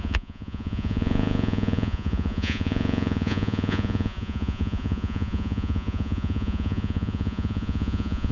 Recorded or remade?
remade